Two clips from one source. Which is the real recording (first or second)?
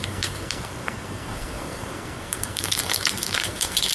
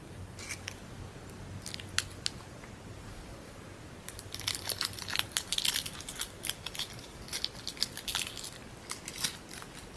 second